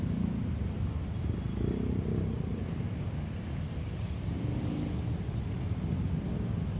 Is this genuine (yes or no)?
yes